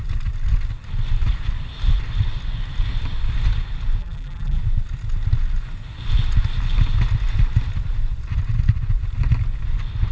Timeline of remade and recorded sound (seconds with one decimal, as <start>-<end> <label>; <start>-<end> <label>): 0.0-4.0 recorded; 4.0-4.6 remade; 4.6-10.1 recorded

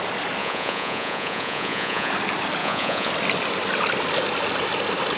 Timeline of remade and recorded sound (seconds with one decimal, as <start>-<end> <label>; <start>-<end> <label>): 0.0-0.4 recorded; 0.4-2.1 remade; 2.1-2.6 recorded; 2.6-3.1 remade; 3.1-5.2 recorded

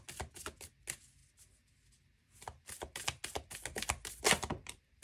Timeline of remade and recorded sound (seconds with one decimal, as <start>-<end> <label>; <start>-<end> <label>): 0.0-5.0 recorded

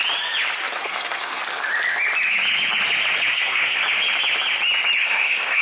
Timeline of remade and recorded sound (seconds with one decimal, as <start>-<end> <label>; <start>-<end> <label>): 0.0-0.8 recorded; 0.8-1.4 remade; 1.4-3.3 recorded; 3.3-3.8 remade; 3.8-5.0 recorded; 5.0-5.6 remade

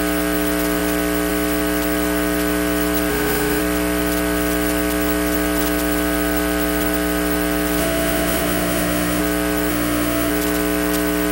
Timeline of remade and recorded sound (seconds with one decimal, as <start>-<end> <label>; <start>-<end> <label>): 0.0-3.1 recorded; 3.1-3.6 remade; 3.6-7.8 recorded; 7.8-9.2 remade; 9.2-9.7 recorded; 9.7-10.3 remade; 10.3-11.3 recorded

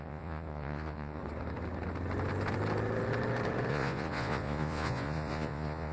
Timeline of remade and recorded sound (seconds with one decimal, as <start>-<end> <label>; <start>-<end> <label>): 0.0-1.2 remade; 1.2-3.7 recorded; 3.7-5.9 remade